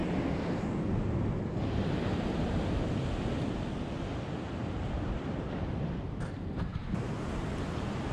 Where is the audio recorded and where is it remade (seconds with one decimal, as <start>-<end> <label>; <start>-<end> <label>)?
0.0-8.1 recorded